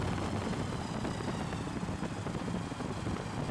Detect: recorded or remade recorded